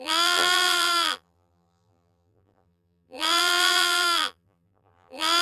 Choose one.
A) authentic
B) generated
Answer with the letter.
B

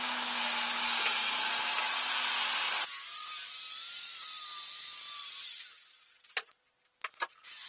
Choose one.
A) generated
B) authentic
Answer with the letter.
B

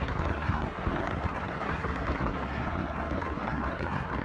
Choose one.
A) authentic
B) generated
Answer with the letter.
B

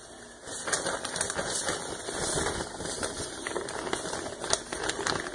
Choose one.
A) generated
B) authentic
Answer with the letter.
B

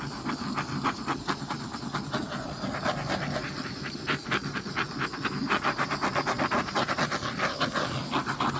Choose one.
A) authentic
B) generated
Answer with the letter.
A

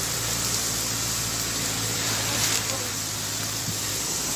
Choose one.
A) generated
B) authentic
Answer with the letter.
A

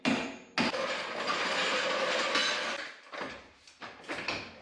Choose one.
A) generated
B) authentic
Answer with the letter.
B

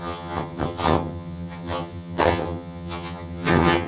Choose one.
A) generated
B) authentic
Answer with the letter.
A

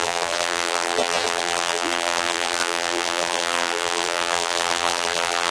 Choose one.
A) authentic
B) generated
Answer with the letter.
B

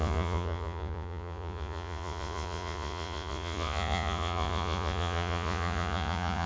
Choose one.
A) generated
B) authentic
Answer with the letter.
A